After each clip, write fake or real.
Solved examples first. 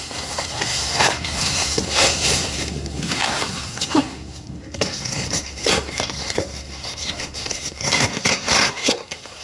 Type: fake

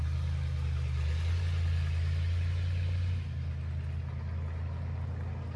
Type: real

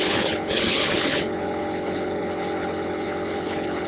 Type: fake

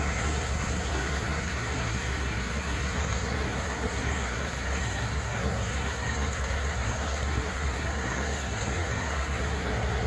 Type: fake